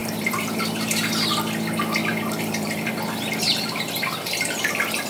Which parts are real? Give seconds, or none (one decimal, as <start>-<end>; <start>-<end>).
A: 0.6-2.1; 2.9-5.1